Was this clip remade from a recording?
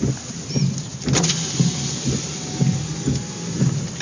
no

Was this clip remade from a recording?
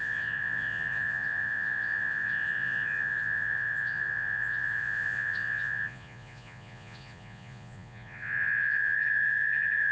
yes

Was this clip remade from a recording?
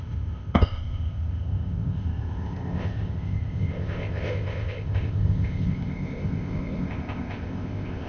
yes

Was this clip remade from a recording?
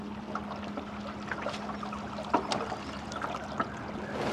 no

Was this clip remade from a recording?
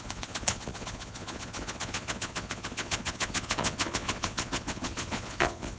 yes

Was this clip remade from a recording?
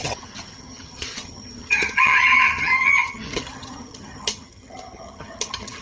yes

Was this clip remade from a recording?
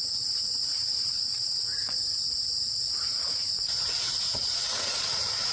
yes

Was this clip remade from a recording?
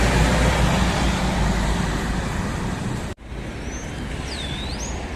no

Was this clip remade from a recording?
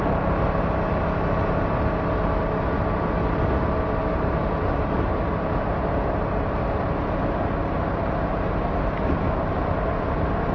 no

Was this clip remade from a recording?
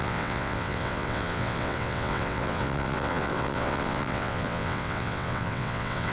yes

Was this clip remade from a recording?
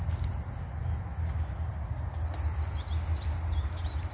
no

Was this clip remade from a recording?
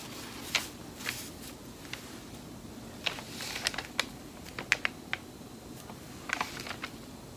no